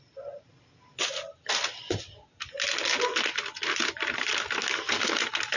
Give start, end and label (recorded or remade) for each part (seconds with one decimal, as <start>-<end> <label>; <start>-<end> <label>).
0.0-5.6 recorded